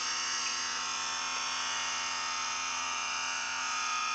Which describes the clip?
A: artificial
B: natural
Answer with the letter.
A